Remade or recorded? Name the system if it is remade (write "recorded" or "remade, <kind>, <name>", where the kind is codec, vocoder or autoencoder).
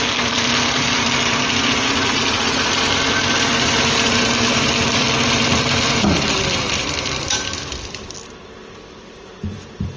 remade, vocoder, BigVGAN v2